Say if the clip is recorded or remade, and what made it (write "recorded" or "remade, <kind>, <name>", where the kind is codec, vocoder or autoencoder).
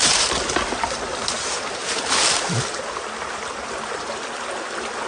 recorded